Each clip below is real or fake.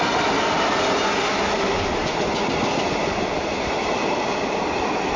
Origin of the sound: real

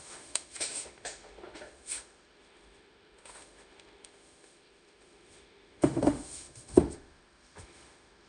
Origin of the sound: fake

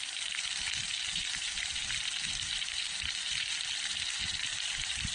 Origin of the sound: real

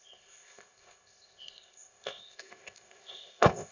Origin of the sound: fake